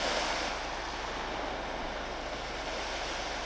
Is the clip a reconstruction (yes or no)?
no